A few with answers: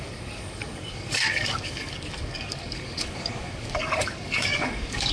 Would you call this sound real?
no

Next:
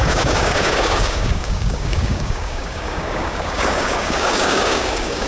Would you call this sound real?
no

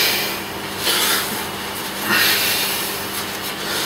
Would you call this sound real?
yes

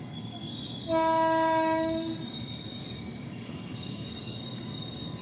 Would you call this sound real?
no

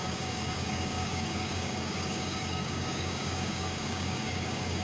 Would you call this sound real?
no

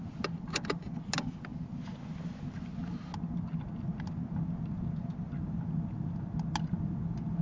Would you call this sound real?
yes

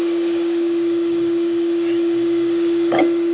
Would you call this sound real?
no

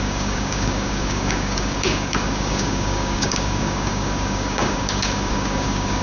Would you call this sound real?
no